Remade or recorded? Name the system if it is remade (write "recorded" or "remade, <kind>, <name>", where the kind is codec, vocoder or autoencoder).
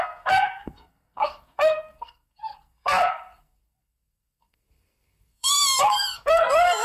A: remade, codec, SNAC